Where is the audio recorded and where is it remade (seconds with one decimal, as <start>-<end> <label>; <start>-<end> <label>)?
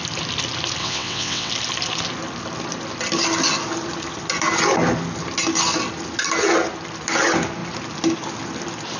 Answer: 0.0-0.8 recorded; 0.8-1.5 remade; 1.5-9.0 recorded